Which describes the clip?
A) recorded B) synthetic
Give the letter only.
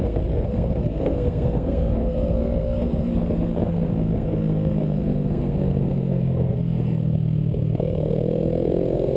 B